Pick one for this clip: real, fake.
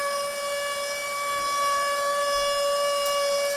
real